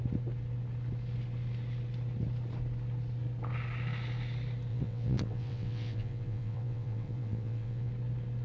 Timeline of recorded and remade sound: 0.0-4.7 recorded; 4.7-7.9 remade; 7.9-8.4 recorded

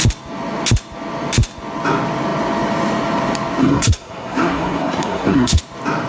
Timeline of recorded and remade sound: 0.0-3.6 recorded; 3.6-5.6 remade; 5.6-6.1 recorded